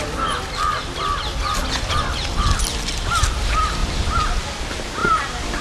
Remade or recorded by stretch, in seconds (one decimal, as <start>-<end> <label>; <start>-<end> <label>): 0.0-5.6 recorded